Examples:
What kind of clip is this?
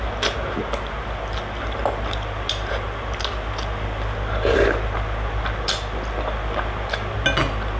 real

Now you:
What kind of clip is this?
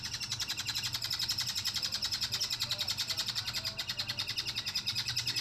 fake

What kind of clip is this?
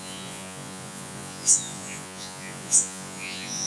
fake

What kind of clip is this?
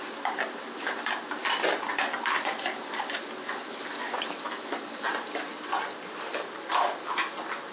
real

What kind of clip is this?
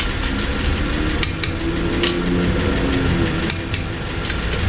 real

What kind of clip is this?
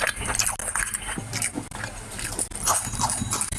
real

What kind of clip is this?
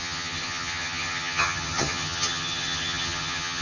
fake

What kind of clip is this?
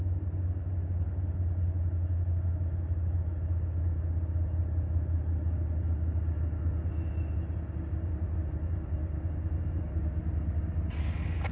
real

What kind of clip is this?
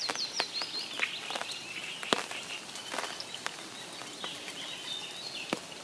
real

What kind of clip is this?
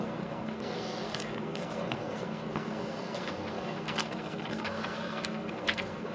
fake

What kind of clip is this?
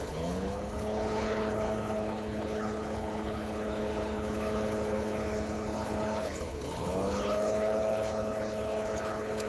fake